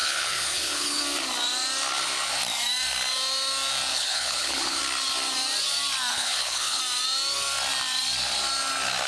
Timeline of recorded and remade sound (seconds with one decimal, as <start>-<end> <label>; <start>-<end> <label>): 0.0-1.0 remade; 1.0-3.9 recorded; 3.9-4.8 remade; 4.8-6.1 recorded; 6.1-6.8 remade; 6.8-9.1 recorded

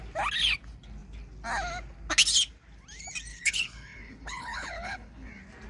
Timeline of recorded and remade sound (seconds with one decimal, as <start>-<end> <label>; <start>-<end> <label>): 0.0-3.3 recorded; 3.3-5.3 remade; 5.3-5.7 recorded